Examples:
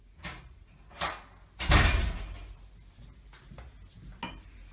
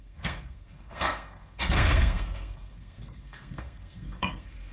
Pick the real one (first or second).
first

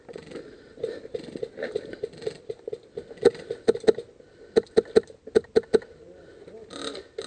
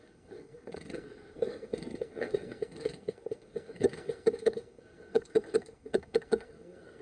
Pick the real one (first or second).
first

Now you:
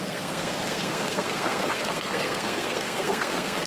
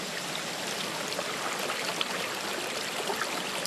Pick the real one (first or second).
second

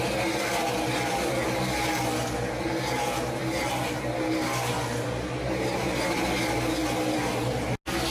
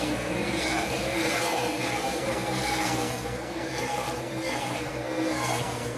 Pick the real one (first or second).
first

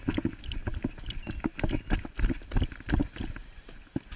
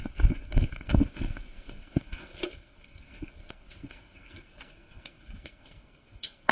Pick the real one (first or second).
first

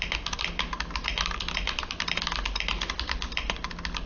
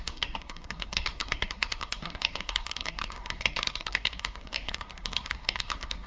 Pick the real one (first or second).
first